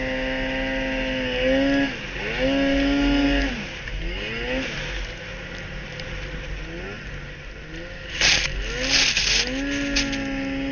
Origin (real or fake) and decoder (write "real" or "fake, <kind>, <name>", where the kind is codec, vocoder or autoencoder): real